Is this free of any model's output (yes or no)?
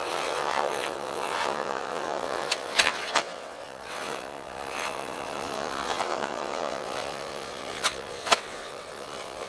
no